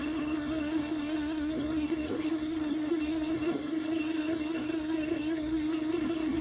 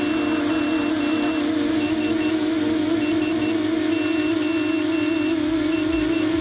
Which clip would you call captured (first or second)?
second